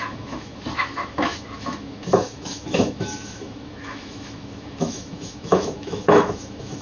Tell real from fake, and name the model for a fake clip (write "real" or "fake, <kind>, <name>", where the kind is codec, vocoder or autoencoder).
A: fake, autoencoder, DAC-VAE